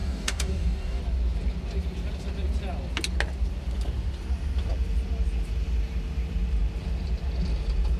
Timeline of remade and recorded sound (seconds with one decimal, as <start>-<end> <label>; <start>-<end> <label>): 0.0-1.0 remade; 1.0-8.0 recorded